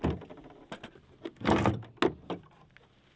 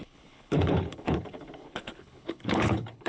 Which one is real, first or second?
first